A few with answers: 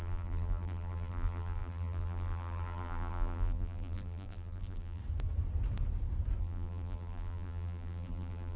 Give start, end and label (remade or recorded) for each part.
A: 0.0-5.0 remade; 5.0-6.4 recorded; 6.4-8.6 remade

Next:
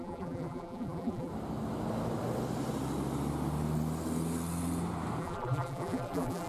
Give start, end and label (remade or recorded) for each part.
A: 0.0-1.3 remade; 1.3-5.2 recorded; 5.2-6.5 remade

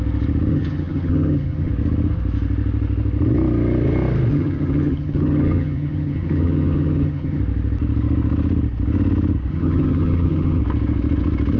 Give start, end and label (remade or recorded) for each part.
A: 0.0-0.5 recorded; 0.5-1.7 remade; 1.7-4.3 recorded; 4.3-7.4 remade; 7.4-9.5 recorded; 9.5-10.6 remade; 10.6-11.6 recorded

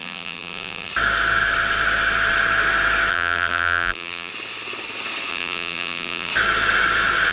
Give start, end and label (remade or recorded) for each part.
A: 0.0-0.9 remade; 0.9-3.1 recorded; 3.1-4.3 remade; 4.3-5.3 recorded; 5.3-6.3 remade; 6.3-7.3 recorded

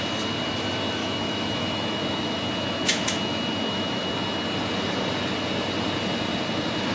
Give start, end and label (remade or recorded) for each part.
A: 0.0-1.0 recorded; 1.0-4.1 remade; 4.1-6.9 recorded

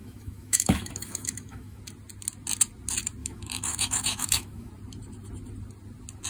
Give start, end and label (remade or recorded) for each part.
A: 0.0-1.8 remade; 1.8-3.2 recorded; 3.2-4.7 remade; 4.7-6.3 recorded

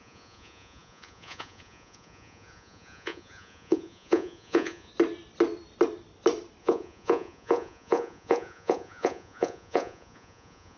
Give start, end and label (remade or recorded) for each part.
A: 0.0-4.9 remade; 4.9-6.6 recorded; 6.6-10.8 remade

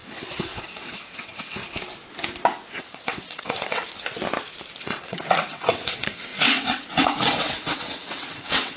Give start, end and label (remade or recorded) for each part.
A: 0.0-1.6 remade; 1.6-2.7 recorded; 2.7-3.9 remade; 3.9-4.8 recorded; 4.8-8.8 remade